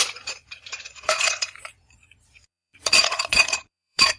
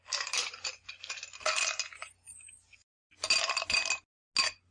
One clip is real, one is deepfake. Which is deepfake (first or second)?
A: first